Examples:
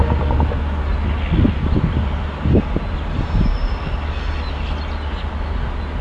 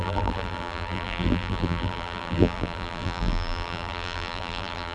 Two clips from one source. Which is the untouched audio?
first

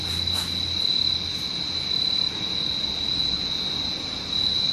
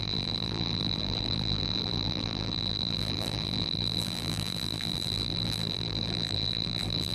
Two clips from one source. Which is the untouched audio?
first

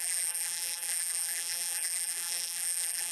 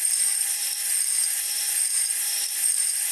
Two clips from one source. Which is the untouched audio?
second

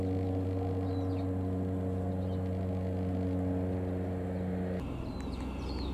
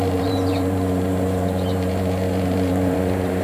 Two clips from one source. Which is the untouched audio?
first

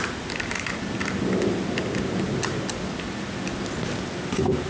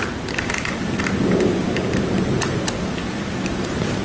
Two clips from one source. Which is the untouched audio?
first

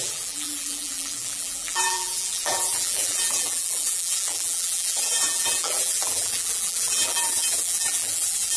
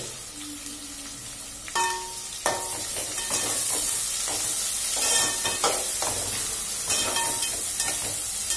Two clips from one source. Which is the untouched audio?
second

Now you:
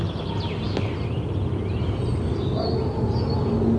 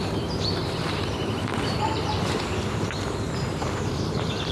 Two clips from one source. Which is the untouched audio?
first